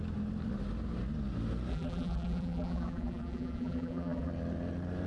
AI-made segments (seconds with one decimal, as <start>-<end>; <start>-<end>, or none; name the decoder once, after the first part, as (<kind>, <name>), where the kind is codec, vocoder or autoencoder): 1.7-4.3 (vocoder, BigVGAN v2)